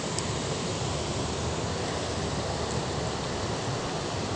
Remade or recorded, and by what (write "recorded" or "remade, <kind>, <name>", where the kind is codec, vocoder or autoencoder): recorded